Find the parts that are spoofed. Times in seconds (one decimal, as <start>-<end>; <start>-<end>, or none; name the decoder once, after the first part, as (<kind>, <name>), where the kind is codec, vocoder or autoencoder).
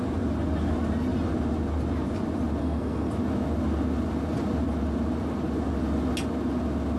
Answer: 2.6-3.1 (codec, SNAC)